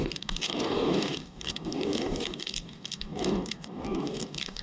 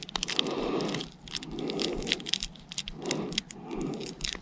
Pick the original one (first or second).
second